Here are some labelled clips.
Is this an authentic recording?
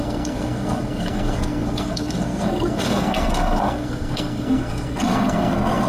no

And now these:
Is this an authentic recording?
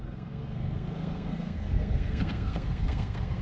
no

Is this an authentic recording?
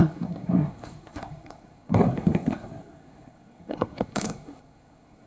no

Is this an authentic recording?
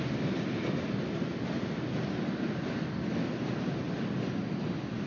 yes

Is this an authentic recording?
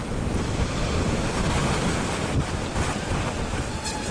yes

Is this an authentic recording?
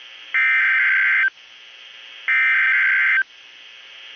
yes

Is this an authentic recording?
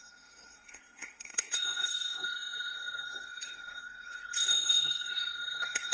no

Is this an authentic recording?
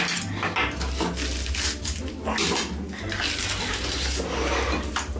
yes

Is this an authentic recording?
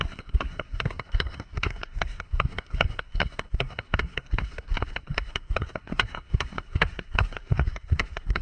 no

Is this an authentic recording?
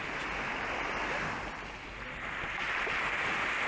yes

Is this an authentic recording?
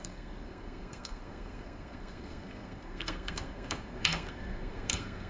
no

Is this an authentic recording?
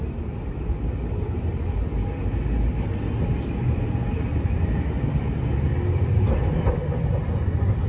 yes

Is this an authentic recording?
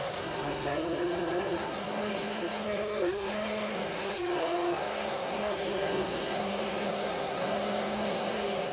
no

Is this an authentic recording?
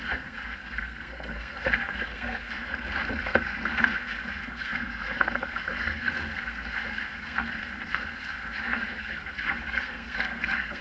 no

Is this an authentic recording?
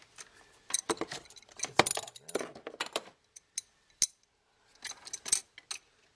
yes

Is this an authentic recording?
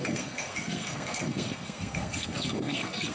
no